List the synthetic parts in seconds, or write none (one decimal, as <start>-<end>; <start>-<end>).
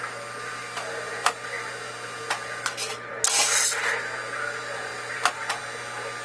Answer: none